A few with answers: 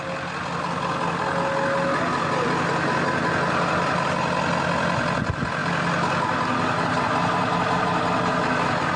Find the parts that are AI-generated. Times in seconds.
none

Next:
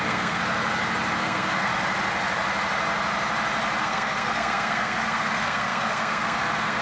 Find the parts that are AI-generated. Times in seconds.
0.0-0.4 (codec, SNAC); 1.2-1.7; 3.8-6.8

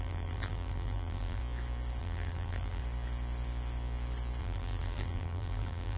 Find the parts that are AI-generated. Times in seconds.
0.0-1.4 (vocoder, BigVGAN v2); 2.0-2.8; 4.4-6.0

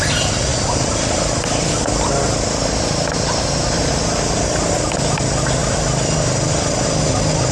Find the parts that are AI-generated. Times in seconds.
none

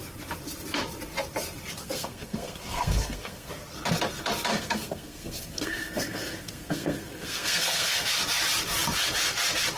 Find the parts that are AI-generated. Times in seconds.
1.8-3.5 (codec, SNAC); 4.5-8.1

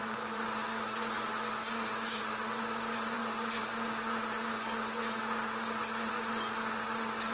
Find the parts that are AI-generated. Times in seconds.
0.0-0.6 (vocoder, BigVGAN v2); 2.6-3.2